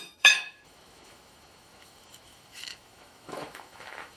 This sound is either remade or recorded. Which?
remade